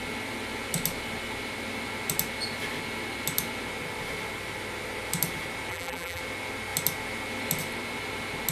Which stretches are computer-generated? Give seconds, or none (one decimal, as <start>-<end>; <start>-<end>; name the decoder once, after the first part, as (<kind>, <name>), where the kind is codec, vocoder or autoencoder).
5.7-6.2 (vocoder, BigVGAN v2)